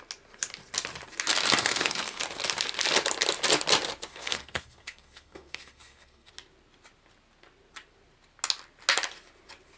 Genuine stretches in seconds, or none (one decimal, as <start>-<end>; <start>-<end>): 0.0-1.6; 2.2-4.1; 6.3-9.8